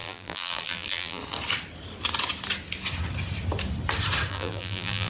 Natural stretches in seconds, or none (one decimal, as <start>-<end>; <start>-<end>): 1.2-4.3